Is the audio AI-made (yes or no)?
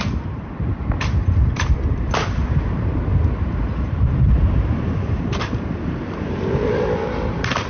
yes